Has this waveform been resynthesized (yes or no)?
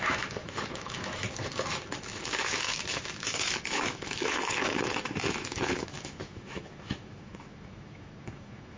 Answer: yes